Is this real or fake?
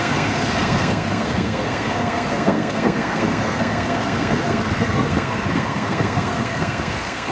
fake